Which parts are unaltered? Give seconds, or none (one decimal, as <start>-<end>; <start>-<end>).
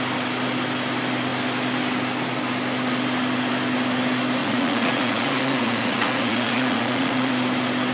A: 0.0-4.4; 7.3-7.9